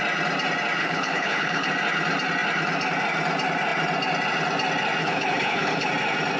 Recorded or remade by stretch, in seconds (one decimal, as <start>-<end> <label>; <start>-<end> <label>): 0.0-0.8 recorded; 0.8-1.7 remade; 1.7-5.0 recorded; 5.0-5.9 remade; 5.9-6.4 recorded